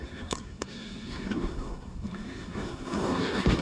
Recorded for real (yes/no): no